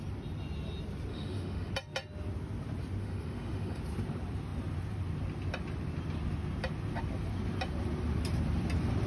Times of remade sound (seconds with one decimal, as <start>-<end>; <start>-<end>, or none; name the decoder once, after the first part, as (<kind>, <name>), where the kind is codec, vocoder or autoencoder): 1.1-1.7 (autoencoder, DAC-VAE); 3.0-3.8